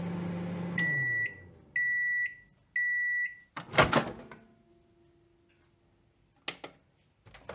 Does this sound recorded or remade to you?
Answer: recorded